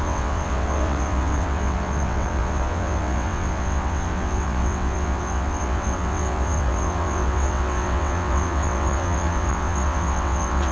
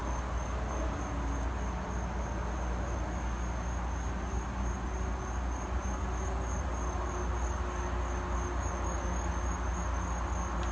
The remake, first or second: first